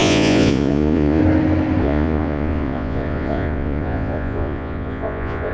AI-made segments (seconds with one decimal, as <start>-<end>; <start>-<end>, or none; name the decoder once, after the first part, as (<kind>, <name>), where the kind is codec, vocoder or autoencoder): 0.0-1.2 (vocoder, Vocos); 1.8-5.5

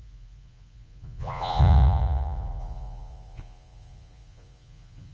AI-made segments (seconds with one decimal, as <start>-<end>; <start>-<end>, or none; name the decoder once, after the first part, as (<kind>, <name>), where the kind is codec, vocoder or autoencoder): 0.0-5.1 (vocoder, Vocos)

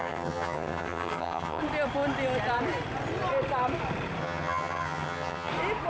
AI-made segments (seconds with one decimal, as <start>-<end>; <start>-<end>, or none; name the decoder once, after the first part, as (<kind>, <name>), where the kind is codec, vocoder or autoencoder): 0.0-1.6 (vocoder, HiFi-GAN); 4.2-5.5

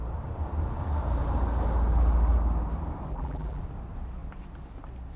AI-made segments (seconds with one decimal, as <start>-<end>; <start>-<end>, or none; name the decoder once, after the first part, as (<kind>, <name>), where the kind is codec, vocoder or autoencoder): 3.1-3.6 (vocoder, BigVGAN v2)

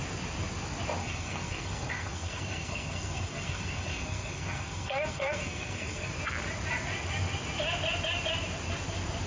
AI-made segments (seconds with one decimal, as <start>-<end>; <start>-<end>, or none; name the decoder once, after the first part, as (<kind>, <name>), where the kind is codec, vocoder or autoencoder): 1.0-6.1 (codec, SNAC)

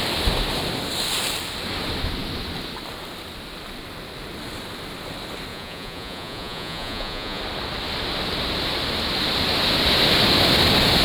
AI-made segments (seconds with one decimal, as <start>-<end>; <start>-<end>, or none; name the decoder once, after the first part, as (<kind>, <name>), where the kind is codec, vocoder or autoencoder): 5.5-7.4 (vocoder, Vocos)

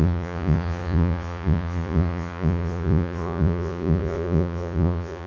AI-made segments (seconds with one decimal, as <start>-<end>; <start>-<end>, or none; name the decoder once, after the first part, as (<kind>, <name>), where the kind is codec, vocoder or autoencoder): 0.0-5.3 (vocoder, Vocos)

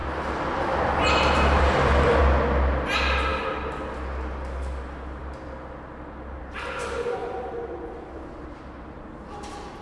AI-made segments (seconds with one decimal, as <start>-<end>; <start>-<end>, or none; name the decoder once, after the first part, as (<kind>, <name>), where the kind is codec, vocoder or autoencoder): 0.0-2.2 (vocoder, BigVGAN v2); 7.2-9.8